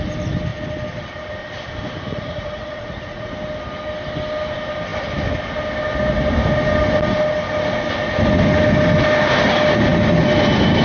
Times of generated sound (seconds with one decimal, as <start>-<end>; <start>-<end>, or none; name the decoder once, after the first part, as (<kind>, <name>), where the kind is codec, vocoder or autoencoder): 2.1-3.3 (vocoder, Vocos)